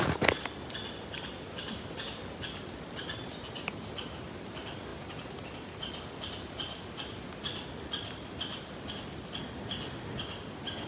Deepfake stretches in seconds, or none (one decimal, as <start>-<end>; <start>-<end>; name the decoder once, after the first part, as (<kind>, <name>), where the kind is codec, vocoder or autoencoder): none